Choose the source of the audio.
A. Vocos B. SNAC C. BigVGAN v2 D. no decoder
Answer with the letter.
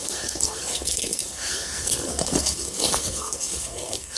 B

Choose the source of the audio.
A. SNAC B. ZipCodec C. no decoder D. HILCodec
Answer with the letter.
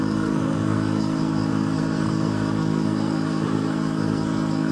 A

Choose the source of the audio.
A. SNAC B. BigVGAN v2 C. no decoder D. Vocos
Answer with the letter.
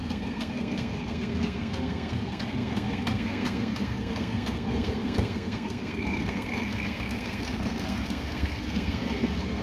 A